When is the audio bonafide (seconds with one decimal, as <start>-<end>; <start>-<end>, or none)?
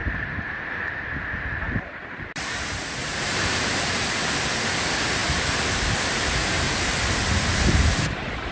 1.1-3.0; 4.1-5.2